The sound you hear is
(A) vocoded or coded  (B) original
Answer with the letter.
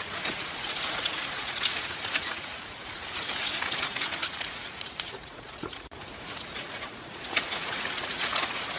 A